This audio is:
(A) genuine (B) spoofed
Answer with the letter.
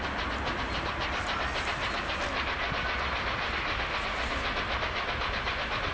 A